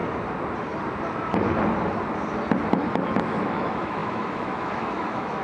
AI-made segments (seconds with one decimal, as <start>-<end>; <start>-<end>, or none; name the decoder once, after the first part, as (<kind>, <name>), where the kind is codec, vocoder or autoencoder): 3.2-5.4 (autoencoder, DAC-VAE)